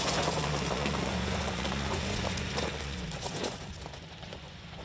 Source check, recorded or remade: remade